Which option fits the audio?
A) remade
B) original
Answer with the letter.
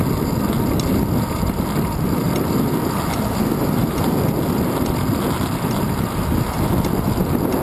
B